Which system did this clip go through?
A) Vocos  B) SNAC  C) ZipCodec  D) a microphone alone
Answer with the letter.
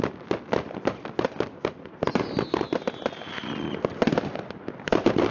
D